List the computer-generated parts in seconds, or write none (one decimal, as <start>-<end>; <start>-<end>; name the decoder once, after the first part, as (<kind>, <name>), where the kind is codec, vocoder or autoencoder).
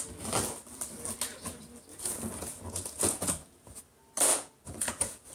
1.9-3.8 (vocoder, Vocos); 4.3-5.3